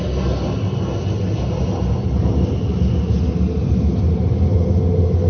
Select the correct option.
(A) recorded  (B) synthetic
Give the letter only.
A